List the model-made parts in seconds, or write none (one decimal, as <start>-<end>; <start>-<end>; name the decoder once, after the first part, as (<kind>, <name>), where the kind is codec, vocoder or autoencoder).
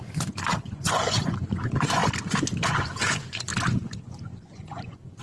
0.0-2.0 (vocoder, Vocos); 2.7-3.5; 4.0-5.2